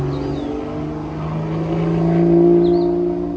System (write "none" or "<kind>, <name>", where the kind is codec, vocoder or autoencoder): none